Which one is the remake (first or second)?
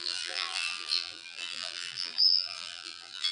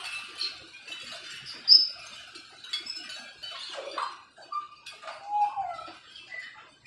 first